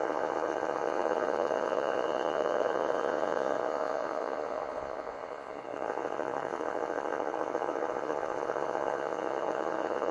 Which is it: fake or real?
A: fake